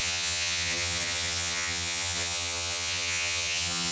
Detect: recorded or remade remade